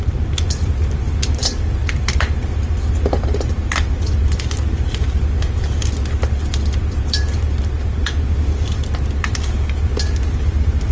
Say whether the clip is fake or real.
real